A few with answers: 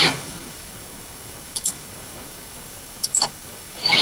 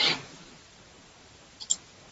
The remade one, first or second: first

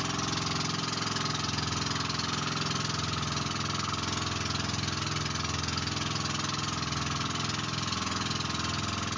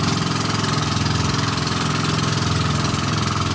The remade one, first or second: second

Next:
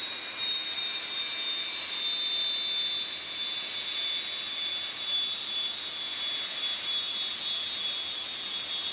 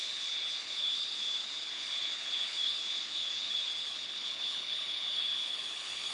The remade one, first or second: second